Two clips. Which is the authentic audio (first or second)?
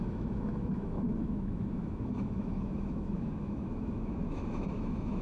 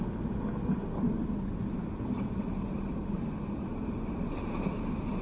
second